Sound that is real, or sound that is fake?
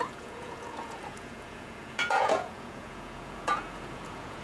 fake